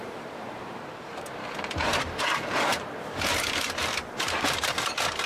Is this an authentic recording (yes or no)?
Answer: no